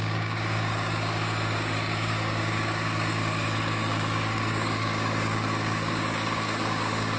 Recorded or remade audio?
remade